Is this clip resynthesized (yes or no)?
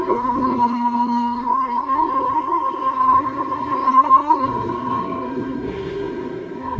yes